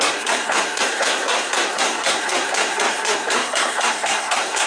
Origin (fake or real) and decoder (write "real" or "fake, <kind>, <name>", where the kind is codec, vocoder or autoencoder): fake, codec, SNAC